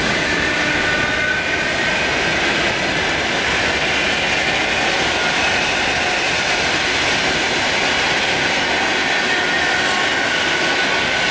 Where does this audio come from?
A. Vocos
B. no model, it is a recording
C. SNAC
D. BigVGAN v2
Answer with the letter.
B